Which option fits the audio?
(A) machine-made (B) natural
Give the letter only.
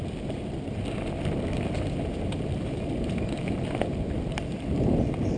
B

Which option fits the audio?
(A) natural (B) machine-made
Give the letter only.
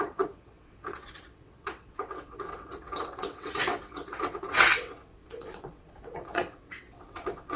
B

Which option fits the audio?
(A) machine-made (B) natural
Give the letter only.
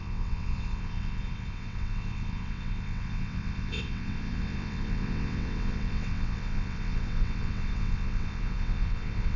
A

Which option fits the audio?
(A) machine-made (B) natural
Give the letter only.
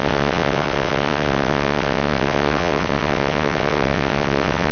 A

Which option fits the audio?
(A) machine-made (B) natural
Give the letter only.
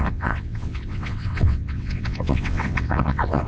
A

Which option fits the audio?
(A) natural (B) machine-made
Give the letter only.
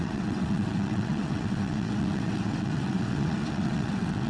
B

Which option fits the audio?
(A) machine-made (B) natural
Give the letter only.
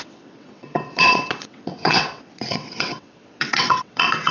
A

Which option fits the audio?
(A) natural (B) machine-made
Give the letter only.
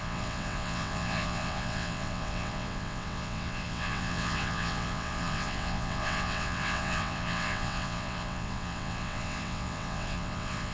B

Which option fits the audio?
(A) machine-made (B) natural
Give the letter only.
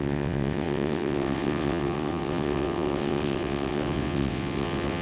A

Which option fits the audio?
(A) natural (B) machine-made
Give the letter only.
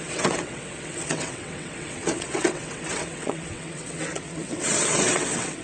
B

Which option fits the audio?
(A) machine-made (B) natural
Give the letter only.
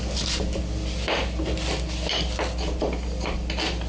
B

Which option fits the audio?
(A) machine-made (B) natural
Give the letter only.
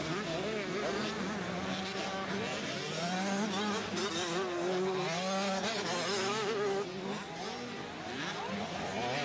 B